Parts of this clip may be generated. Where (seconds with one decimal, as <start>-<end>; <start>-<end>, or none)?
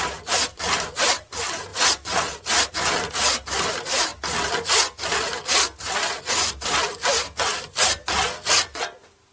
none